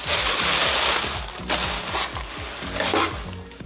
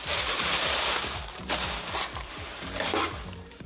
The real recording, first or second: first